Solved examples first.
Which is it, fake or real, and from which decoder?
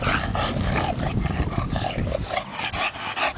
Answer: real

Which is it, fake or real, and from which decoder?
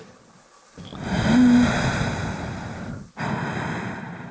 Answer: real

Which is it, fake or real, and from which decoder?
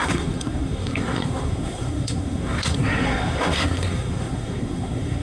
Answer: fake, codec, SNAC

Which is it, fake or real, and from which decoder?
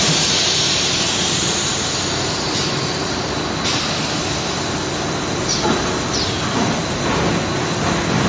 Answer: real